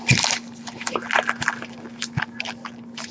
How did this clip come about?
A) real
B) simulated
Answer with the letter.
A